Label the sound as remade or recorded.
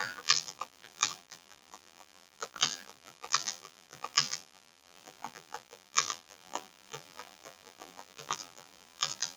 remade